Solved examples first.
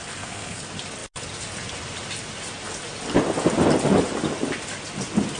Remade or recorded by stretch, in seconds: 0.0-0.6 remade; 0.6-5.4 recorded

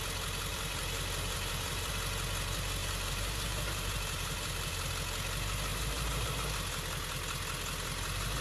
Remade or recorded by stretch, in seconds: 0.0-0.5 recorded; 0.5-1.9 remade; 1.9-2.8 recorded; 2.8-4.9 remade; 4.9-5.7 recorded; 5.7-6.3 remade; 6.3-8.4 recorded

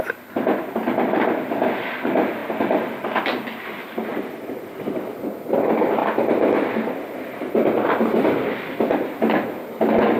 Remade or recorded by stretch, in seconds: 0.0-2.4 recorded; 2.4-3.2 remade; 3.2-4.1 recorded; 4.1-5.2 remade; 5.2-6.0 recorded; 6.0-7.5 remade; 7.5-10.2 recorded

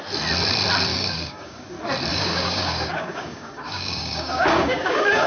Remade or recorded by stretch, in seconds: 0.0-0.9 recorded; 0.9-1.7 remade; 1.7-2.1 recorded; 2.1-5.3 remade

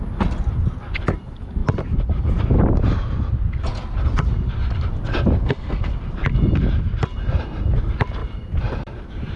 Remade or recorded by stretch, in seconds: 0.0-5.4 recorded; 5.4-5.9 remade; 5.9-9.4 recorded